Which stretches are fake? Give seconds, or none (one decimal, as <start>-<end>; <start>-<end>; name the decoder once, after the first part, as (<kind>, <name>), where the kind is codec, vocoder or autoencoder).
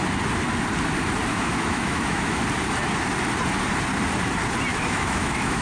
1.3-2.4 (autoencoder, DAC-VAE); 4.7-5.6